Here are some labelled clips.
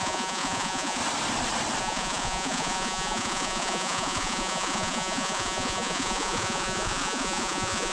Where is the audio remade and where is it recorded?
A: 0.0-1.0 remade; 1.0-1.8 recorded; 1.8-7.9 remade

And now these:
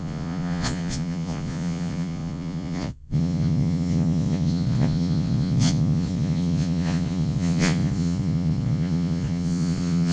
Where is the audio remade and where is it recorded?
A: 0.0-10.1 remade

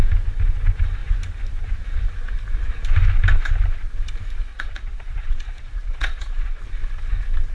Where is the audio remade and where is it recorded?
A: 0.0-4.5 recorded; 4.5-6.6 remade; 6.6-7.5 recorded

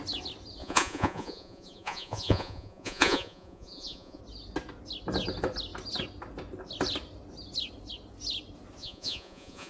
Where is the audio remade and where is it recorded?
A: 0.0-0.6 recorded; 0.6-4.2 remade; 4.2-8.8 recorded; 8.8-9.7 remade

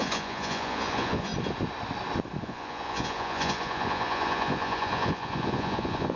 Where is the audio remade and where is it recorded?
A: 0.0-1.3 remade; 1.3-2.4 recorded; 2.4-6.2 remade